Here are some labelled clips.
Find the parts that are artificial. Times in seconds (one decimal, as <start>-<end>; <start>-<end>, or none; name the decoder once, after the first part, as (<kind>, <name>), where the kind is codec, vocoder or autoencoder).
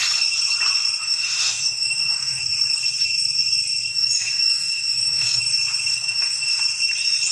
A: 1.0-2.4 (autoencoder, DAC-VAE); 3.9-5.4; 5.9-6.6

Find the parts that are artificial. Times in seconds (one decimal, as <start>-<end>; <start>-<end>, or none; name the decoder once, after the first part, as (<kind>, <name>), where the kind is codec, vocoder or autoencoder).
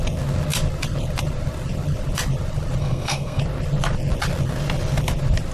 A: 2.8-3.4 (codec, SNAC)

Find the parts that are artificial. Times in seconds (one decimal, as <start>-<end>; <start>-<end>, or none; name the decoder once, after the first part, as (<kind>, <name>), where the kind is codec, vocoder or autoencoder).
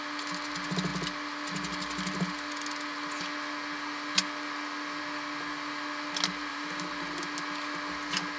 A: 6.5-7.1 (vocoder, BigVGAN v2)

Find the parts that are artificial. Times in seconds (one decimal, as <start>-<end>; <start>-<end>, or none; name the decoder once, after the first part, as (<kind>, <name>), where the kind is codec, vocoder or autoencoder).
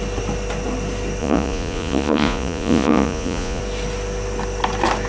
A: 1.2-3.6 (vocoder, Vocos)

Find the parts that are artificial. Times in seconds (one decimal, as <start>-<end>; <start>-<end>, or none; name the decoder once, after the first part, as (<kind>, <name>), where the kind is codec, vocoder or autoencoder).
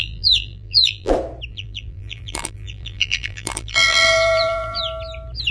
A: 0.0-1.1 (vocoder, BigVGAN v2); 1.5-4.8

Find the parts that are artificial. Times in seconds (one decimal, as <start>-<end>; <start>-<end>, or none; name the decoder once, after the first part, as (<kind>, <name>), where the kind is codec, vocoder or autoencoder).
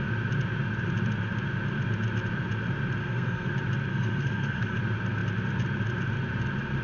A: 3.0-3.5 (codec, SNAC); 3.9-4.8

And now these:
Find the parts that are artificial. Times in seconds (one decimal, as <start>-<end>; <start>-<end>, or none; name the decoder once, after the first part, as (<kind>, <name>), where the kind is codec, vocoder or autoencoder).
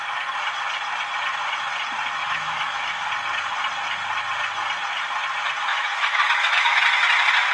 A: 2.2-3.1 (autoencoder, DAC-VAE); 5.7-6.8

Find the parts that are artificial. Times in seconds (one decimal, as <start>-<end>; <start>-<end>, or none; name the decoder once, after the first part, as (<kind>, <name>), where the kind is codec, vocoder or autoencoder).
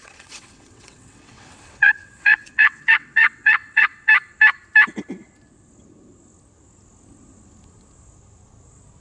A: 0.0-4.1 (vocoder, WaveNeXt)